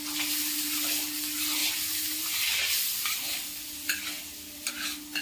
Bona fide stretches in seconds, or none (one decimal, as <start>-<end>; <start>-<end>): 0.0-1.6; 4.7-5.2